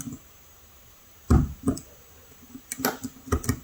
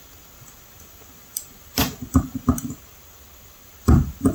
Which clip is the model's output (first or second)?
second